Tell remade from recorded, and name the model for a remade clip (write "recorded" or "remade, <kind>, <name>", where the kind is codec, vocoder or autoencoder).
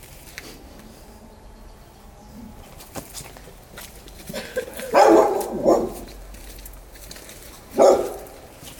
remade, vocoder, BigVGAN v2